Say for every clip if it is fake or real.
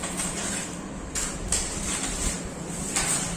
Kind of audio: real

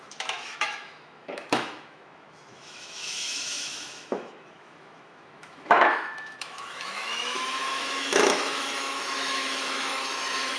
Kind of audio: fake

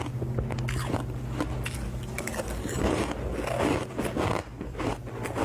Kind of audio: real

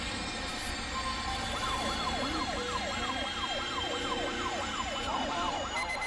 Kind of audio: real